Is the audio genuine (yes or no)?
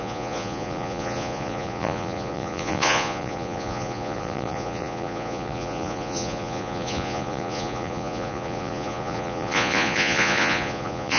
no